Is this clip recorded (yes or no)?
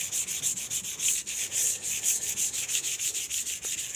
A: yes